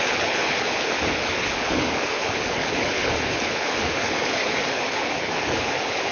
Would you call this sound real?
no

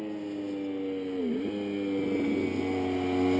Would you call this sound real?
yes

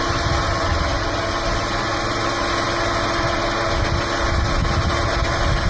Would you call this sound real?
yes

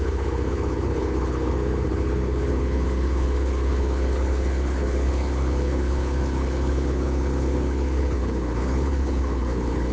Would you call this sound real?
no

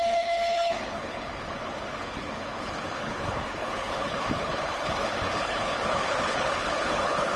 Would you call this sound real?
no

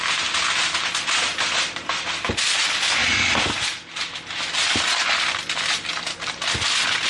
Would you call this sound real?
yes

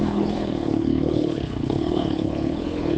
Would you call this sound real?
no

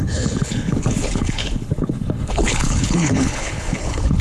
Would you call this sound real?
no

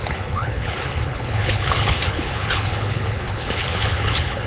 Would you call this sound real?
no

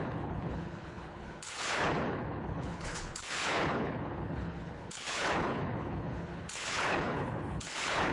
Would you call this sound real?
no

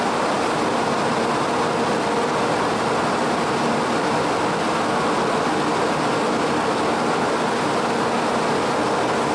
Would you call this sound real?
yes